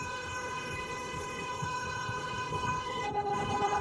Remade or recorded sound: remade